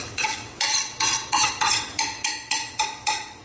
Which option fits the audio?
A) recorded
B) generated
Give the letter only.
B